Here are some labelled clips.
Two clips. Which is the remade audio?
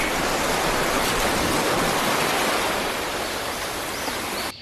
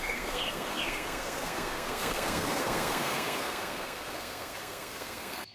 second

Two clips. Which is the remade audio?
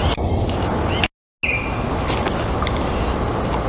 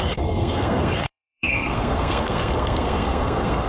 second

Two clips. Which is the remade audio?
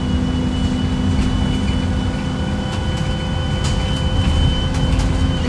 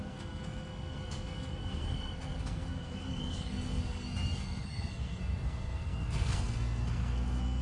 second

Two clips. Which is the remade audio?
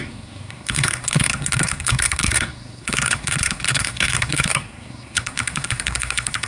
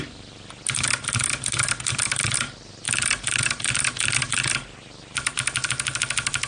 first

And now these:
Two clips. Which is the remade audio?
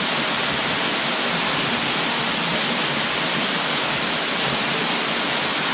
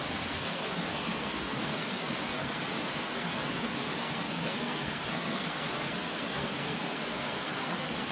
second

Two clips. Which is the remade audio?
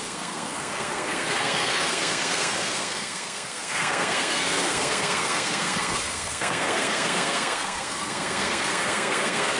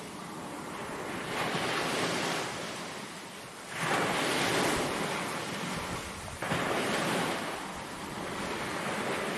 first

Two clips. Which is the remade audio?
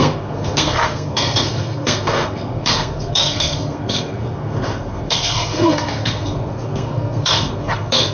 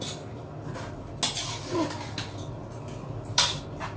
first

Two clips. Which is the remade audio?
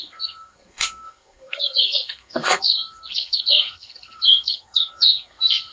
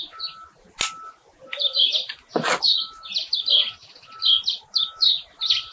first